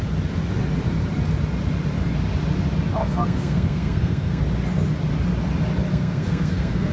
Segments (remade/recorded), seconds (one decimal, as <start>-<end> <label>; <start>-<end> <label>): 0.0-3.0 recorded; 3.0-4.4 remade; 4.4-5.9 recorded; 5.9-6.9 remade